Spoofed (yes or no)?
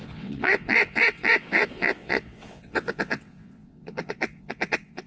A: yes